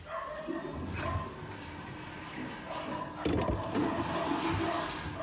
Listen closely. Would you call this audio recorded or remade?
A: recorded